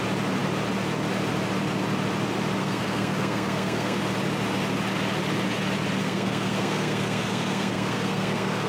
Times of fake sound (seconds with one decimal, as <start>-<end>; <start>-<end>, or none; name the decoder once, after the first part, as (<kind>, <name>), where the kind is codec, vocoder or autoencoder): 2.6-4.0 (codec, SNAC); 6.0-8.7